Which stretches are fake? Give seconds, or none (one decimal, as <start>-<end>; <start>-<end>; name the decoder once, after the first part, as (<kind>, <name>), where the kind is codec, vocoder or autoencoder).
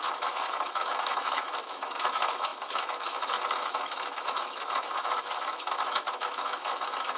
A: 0.0-7.2 (autoencoder, DAC-VAE)